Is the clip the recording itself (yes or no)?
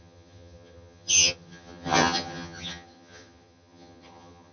no